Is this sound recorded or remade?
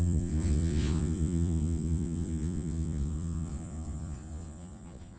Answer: remade